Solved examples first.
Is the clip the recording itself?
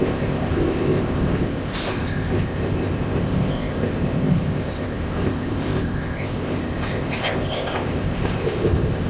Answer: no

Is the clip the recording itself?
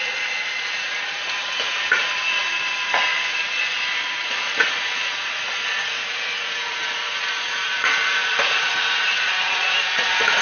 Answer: no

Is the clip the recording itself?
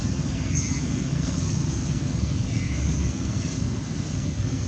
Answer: no